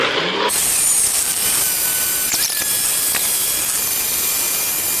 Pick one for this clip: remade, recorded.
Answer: recorded